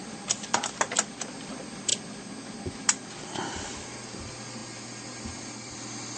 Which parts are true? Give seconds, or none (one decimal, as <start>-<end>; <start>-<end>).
0.0-6.2